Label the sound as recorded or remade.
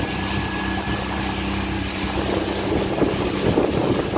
recorded